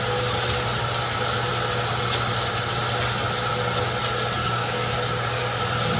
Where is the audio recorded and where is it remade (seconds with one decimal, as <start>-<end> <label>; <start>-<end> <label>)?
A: 0.0-4.4 recorded; 4.4-4.9 remade; 4.9-6.0 recorded